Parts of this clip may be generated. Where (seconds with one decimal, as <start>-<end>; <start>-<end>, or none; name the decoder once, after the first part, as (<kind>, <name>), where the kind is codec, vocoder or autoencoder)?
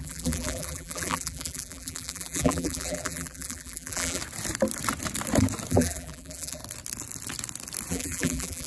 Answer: 0.0-4.2 (vocoder, BigVGAN v2); 5.7-6.6; 7.9-8.7